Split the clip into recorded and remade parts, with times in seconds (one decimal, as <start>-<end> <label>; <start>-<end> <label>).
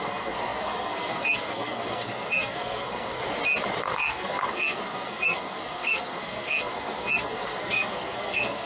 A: 0.0-3.2 remade; 3.2-3.8 recorded; 3.8-8.7 remade